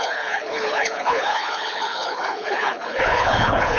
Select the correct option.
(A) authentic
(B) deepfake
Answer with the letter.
B